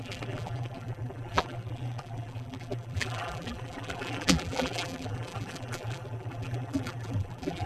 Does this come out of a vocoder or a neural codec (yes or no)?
yes